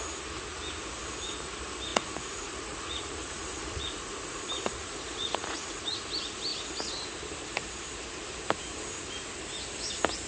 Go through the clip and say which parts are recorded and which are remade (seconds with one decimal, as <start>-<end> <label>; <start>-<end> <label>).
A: 0.0-1.9 recorded; 1.9-6.0 remade; 6.0-10.3 recorded